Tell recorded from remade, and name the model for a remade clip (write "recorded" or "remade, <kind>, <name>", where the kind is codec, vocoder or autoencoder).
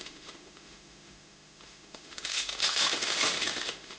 remade, autoencoder, DAC-VAE